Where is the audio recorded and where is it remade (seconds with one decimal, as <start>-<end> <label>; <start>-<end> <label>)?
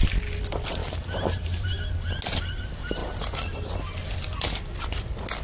0.0-0.8 recorded; 0.8-1.7 remade; 1.7-5.4 recorded